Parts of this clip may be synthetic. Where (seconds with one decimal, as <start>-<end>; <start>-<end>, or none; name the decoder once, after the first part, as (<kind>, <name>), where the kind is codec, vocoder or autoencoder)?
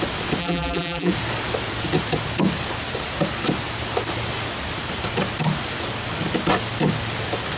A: 0.4-1.1 (vocoder, BigVGAN v2)